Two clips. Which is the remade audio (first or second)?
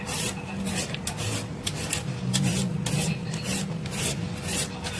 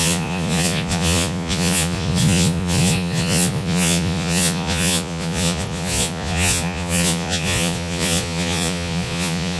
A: second